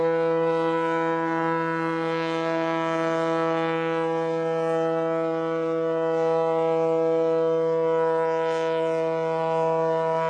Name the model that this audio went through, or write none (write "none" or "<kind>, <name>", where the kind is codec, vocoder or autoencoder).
none